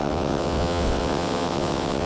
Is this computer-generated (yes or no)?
yes